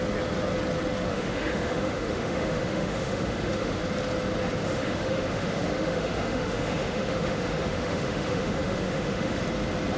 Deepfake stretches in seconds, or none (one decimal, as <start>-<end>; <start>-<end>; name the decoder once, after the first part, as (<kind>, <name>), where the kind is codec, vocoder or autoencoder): 1.1-3.8 (autoencoder, DAC-VAE); 4.6-9.4